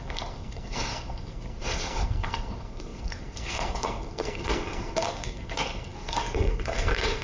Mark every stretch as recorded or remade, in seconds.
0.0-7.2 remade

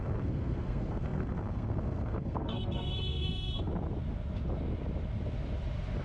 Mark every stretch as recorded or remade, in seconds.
0.0-3.7 remade; 3.7-6.0 recorded

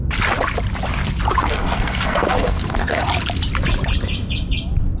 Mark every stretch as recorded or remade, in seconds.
0.0-1.4 recorded; 1.4-3.0 remade; 3.0-5.0 recorded

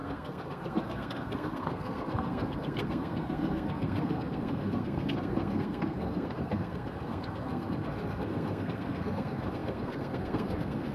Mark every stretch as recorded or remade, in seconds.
0.0-10.9 remade

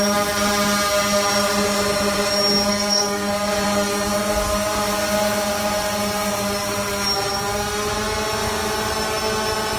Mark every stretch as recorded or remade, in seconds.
0.0-2.7 recorded; 2.7-3.5 remade; 3.5-9.8 recorded

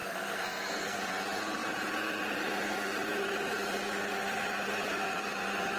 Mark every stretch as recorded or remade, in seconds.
0.0-1.0 remade; 1.0-5.8 recorded

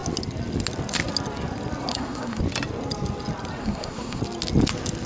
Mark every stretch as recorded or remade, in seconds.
0.0-1.9 recorded; 1.9-2.4 remade; 2.4-3.6 recorded; 3.6-4.2 remade; 4.2-5.1 recorded

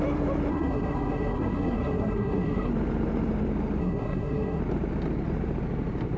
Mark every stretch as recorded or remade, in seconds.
0.0-0.5 recorded; 0.5-2.7 remade; 2.7-3.8 recorded; 3.8-4.6 remade; 4.6-6.2 recorded